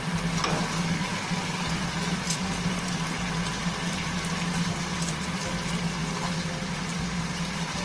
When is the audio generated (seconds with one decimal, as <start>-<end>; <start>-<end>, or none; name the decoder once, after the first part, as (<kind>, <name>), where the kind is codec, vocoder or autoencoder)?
none